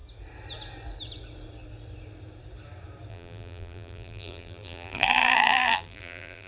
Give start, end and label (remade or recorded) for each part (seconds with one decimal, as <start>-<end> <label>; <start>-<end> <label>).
0.0-3.1 recorded; 3.1-6.5 remade